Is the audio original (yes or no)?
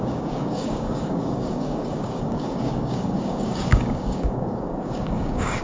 no